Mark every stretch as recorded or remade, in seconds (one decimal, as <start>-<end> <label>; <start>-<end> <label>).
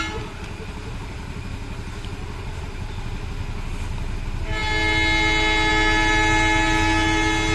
0.0-7.5 recorded